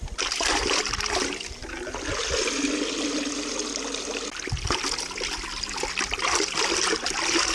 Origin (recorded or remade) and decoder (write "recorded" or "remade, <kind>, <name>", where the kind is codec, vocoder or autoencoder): recorded